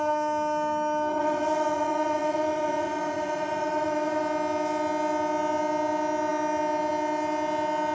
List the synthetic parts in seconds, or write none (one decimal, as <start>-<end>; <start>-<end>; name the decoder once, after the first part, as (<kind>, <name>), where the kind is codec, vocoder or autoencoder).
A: 1.1-4.2 (vocoder, Vocos)

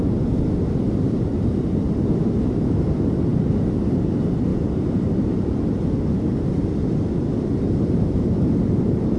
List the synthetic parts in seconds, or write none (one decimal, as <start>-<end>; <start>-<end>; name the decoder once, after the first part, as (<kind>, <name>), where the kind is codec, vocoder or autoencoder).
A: none

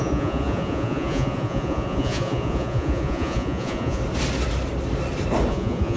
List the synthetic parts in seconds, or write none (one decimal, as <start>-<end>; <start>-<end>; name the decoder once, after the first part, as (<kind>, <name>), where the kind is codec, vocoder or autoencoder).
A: 0.0-4.0 (vocoder, Vocos); 5.5-6.0

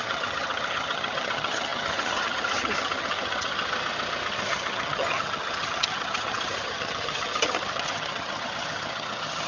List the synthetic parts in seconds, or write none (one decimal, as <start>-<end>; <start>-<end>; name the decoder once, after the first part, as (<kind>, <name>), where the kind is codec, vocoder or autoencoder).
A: 0.0-3.7 (vocoder, HiFi-GAN); 4.3-9.5

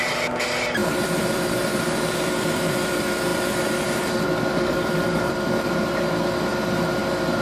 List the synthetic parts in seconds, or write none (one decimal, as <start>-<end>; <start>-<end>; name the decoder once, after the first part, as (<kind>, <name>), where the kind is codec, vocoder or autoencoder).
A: 4.5-5.3 (codec, DAC)

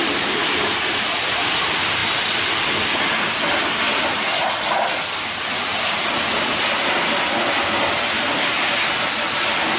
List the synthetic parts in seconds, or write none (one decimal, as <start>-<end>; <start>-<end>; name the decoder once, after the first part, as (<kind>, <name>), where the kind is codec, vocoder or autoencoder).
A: none

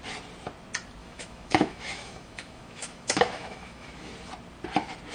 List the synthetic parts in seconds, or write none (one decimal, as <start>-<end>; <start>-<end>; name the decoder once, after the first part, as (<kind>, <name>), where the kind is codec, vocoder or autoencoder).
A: 1.0-4.1 (autoencoder, DAC-VAE)

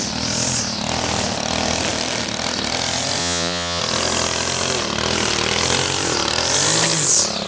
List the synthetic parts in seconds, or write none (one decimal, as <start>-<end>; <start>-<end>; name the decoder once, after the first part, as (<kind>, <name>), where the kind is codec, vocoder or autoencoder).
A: 3.2-3.8 (vocoder, Vocos)